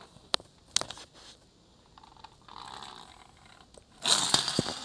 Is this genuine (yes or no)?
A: yes